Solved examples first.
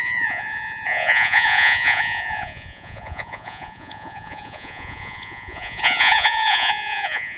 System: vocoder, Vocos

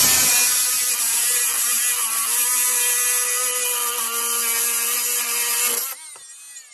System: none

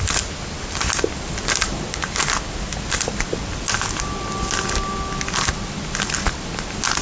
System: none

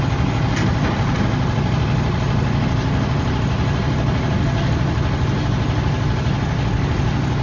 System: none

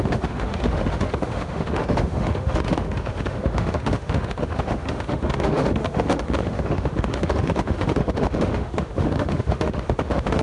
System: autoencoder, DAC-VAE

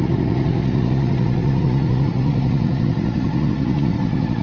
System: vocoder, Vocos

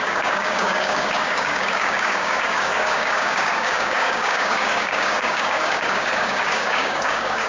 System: codec, DAC